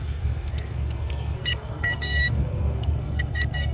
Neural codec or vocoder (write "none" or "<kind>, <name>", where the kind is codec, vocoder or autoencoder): codec, SNAC